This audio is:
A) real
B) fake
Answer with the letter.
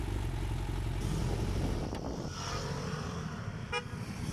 A